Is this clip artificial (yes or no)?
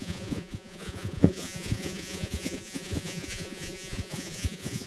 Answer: yes